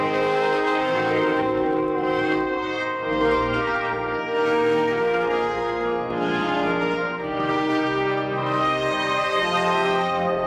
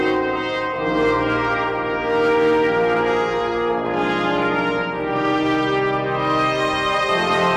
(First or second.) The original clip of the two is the second